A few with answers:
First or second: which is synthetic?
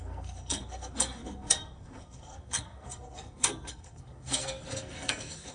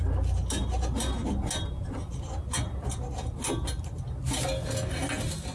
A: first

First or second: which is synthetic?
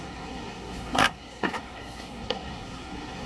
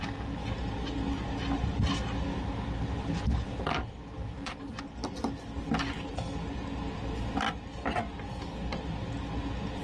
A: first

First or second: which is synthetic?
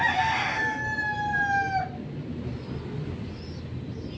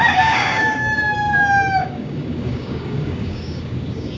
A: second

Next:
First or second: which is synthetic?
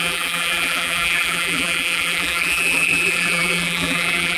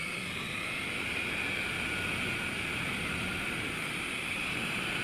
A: first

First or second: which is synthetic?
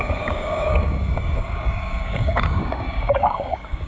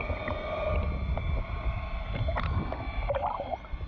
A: first